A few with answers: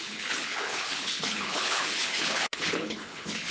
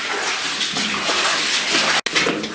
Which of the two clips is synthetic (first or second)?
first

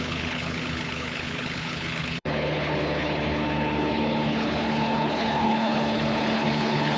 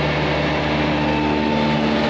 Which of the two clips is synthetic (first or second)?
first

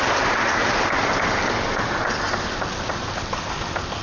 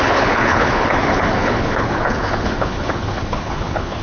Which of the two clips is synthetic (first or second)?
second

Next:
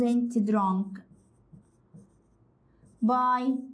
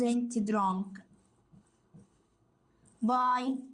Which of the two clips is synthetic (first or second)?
second